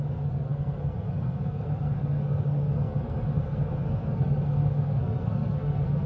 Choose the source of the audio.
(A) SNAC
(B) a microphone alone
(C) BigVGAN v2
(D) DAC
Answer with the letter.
A